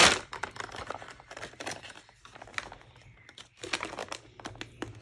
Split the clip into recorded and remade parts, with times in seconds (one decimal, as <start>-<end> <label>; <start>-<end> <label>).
0.0-2.2 remade; 2.2-5.0 recorded